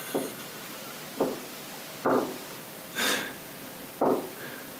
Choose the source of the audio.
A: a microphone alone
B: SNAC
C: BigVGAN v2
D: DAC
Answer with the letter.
C